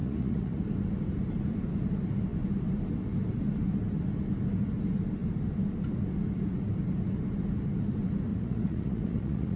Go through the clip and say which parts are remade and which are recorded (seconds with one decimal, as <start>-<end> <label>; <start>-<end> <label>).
0.0-0.6 remade; 0.6-8.3 recorded; 8.3-9.6 remade